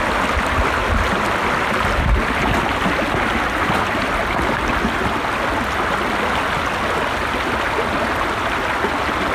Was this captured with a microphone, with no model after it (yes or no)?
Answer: yes